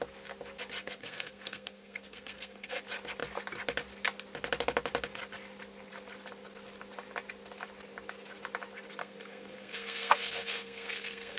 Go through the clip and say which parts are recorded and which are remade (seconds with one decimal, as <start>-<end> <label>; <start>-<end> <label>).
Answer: 0.0-0.8 recorded; 0.8-2.8 remade; 2.8-9.0 recorded; 9.0-11.4 remade